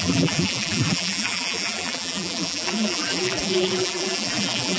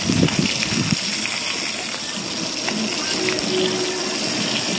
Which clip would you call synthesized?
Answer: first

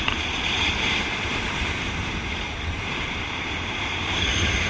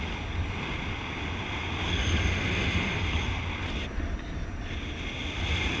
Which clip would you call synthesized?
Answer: first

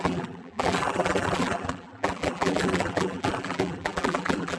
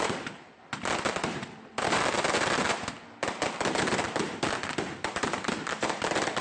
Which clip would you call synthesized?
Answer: first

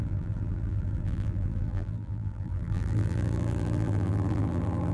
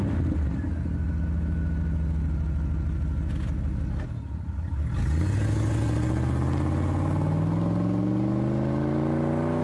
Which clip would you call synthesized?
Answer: first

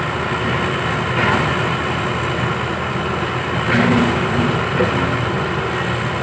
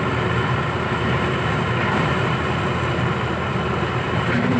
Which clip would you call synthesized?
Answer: second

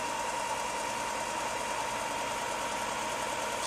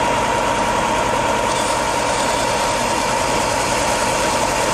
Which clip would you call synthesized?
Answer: second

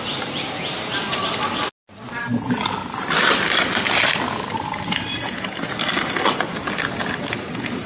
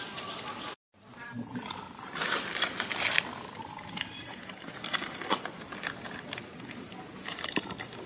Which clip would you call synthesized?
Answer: second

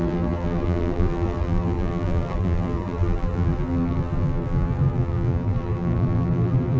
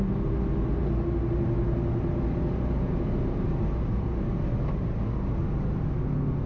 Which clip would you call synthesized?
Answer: first